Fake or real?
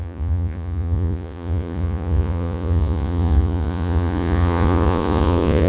fake